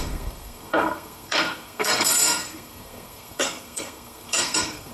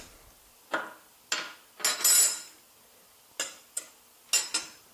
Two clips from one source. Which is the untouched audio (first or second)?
second